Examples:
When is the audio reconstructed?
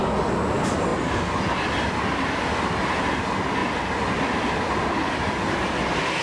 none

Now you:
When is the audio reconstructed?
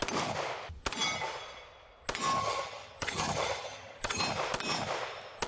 2.4-4.2 (vocoder, HiFi-GAN)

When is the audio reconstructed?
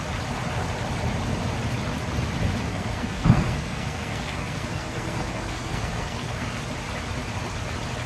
2.7-6.6 (codec, SNAC)